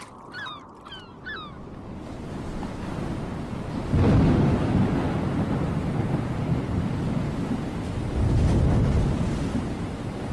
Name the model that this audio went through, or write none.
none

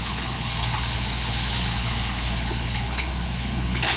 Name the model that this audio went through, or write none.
codec, HILCodec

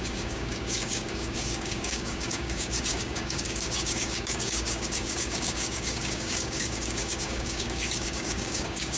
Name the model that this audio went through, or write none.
codec, DAC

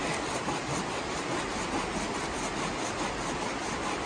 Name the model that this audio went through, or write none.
none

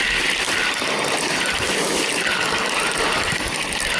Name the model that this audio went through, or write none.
none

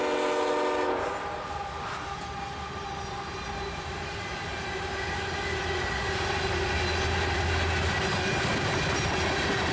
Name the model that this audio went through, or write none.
none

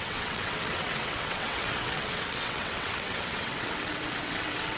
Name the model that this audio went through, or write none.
vocoder, WaveNeXt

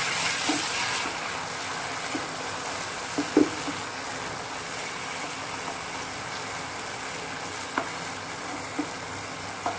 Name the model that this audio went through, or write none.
none